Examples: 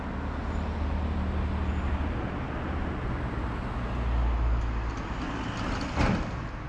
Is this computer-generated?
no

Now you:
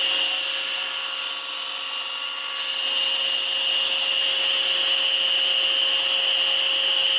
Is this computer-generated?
no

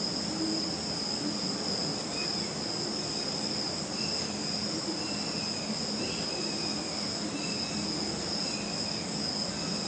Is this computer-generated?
no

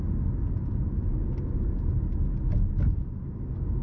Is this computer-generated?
no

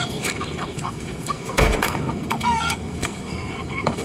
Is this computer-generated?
yes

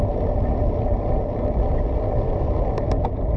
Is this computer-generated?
no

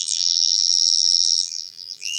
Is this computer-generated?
yes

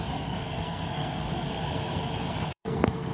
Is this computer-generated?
yes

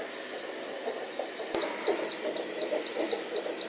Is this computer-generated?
no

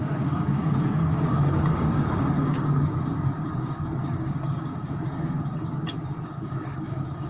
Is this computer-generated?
yes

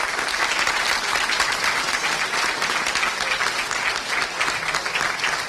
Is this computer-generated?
no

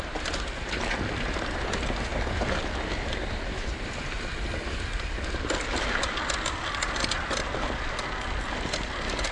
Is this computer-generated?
no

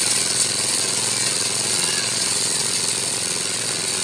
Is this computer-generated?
yes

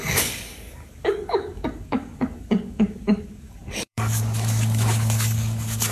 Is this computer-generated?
yes